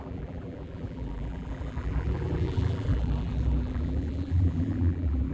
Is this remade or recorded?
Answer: remade